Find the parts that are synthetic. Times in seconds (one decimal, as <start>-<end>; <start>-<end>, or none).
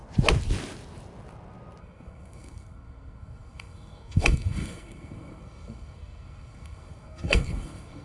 1.8-8.0